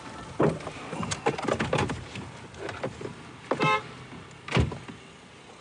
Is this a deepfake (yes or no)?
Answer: no